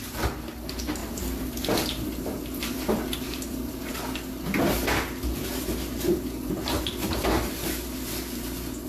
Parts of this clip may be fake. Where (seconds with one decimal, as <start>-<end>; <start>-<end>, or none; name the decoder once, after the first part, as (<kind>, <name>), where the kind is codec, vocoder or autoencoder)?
1.0-3.9 (vocoder, BigVGAN v2)

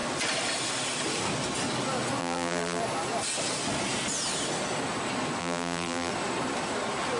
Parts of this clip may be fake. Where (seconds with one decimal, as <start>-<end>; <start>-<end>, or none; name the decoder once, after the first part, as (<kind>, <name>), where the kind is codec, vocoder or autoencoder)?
2.2-2.8 (vocoder, BigVGAN v2); 5.4-6.1